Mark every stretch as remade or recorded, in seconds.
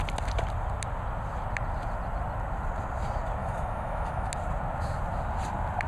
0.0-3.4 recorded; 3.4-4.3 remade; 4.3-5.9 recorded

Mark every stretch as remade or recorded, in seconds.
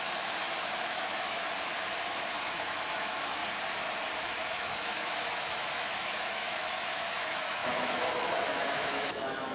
0.0-1.4 remade; 1.4-2.5 recorded; 2.5-3.4 remade; 3.4-4.2 recorded; 4.2-9.5 remade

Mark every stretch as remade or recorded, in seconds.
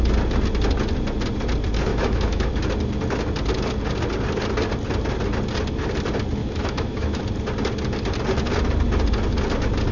0.0-1.9 recorded; 1.9-2.5 remade; 2.5-6.4 recorded; 6.4-7.2 remade; 7.2-9.9 recorded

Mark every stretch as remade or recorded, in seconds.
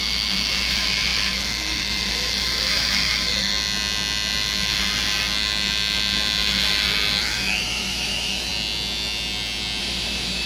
0.0-3.5 remade; 3.5-7.2 recorded; 7.2-8.5 remade; 8.5-9.8 recorded; 9.8-10.5 remade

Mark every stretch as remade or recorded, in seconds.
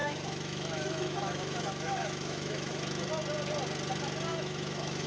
0.0-3.1 remade; 3.1-4.3 recorded; 4.3-5.1 remade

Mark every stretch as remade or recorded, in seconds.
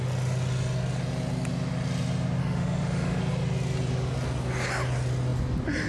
0.0-2.4 recorded; 2.4-3.2 remade; 3.2-5.9 recorded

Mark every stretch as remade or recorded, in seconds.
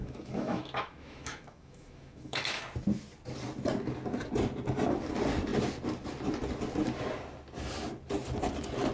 0.0-2.6 remade; 2.6-8.9 recorded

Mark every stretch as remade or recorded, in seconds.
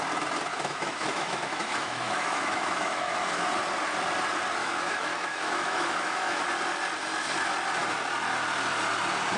0.0-0.5 recorded; 0.5-3.5 remade; 3.5-4.6 recorded; 4.6-6.4 remade; 6.4-9.4 recorded